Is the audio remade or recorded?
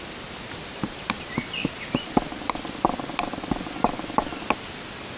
recorded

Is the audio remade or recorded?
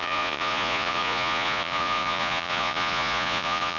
remade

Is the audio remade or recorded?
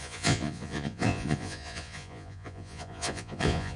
remade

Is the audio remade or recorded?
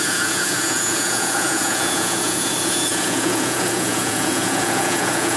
remade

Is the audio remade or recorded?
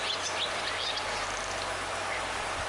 recorded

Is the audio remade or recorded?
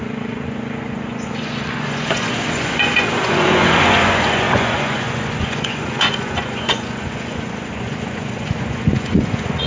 remade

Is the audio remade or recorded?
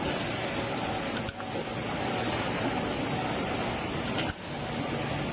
recorded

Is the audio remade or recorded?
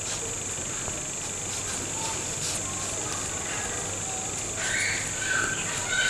recorded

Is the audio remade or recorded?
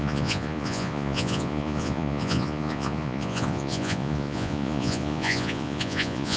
remade